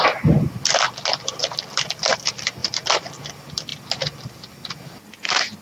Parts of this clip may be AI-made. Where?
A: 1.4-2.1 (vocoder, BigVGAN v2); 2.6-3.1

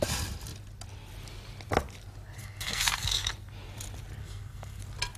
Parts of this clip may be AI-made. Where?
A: 2.4-3.3 (codec, SNAC); 4.2-4.8

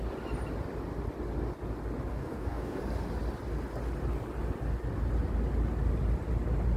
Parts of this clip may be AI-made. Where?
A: 2.1-2.8 (codec, DAC)